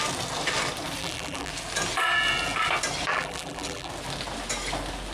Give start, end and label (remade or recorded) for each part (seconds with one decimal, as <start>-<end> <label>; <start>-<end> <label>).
0.0-1.0 recorded; 1.0-1.5 remade; 1.5-3.1 recorded; 3.1-3.9 remade; 3.9-5.1 recorded